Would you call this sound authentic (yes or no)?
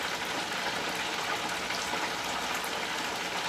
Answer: yes